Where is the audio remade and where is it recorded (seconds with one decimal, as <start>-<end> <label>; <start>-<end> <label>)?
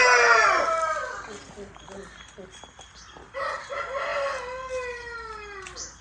0.0-6.0 recorded